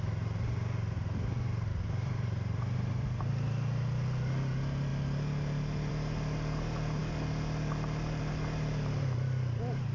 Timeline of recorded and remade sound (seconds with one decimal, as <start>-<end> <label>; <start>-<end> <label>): 0.0-1.7 recorded; 1.7-3.3 remade; 3.3-9.9 recorded